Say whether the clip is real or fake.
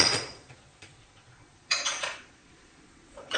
fake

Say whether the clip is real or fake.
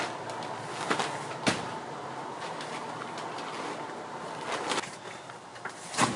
real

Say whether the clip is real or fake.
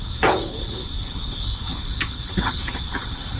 fake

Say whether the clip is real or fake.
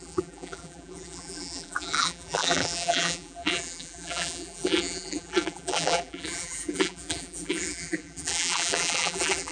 fake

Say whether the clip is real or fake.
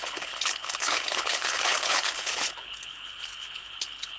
fake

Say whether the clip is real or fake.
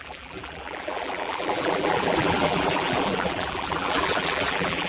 fake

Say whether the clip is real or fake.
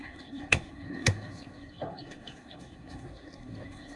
fake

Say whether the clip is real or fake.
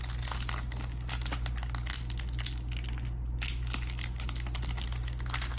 real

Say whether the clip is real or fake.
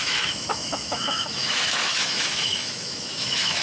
fake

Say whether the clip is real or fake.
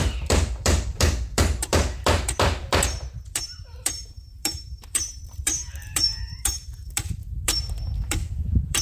fake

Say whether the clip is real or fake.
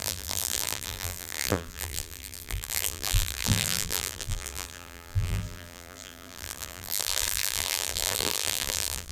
fake